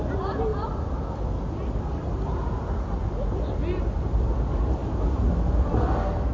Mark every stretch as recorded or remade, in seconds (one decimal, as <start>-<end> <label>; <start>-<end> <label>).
0.0-6.3 recorded